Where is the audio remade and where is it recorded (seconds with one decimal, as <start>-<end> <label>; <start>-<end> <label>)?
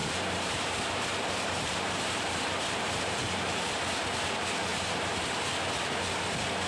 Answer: 0.0-3.8 remade; 3.8-4.7 recorded; 4.7-5.4 remade; 5.4-6.7 recorded